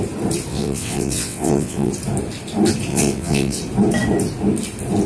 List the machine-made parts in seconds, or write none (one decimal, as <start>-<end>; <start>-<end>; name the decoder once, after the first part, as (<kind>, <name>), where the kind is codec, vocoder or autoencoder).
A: 0.5-1.9 (vocoder, WaveNeXt); 2.9-3.6